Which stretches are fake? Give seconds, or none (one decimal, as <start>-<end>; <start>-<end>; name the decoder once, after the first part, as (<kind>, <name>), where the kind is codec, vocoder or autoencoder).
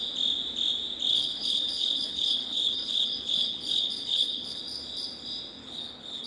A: 1.1-4.6 (codec, HILCodec); 5.6-6.3